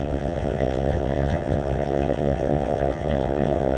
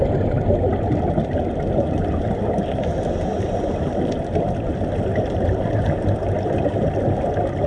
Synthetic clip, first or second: first